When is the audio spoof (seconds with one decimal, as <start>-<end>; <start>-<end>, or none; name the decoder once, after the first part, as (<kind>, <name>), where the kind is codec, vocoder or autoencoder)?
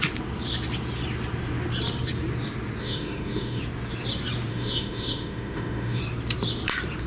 2.8-3.6 (autoencoder, DAC-VAE); 4.5-6.0